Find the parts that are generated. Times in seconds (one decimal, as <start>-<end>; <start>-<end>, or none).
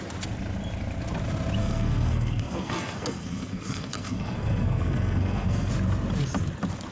1.6-5.7